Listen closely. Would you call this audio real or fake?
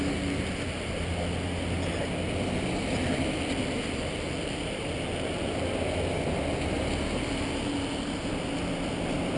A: real